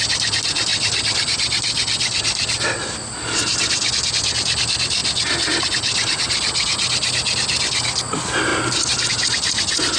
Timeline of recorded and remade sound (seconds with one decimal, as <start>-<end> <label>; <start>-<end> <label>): 0.0-10.0 recorded